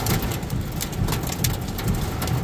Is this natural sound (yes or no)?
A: yes